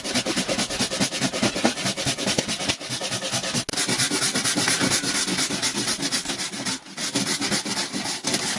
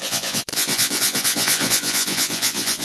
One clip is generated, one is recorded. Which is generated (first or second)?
second